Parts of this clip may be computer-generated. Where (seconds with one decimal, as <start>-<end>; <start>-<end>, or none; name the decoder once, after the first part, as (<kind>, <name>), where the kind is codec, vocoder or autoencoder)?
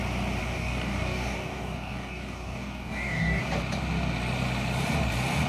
0.4-3.4 (codec, DAC)